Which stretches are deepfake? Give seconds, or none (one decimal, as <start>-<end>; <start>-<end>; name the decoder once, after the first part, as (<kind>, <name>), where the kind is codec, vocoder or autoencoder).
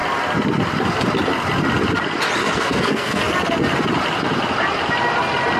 2.4-3.2 (codec, SNAC)